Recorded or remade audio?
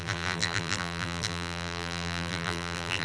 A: remade